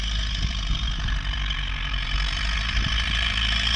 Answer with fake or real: fake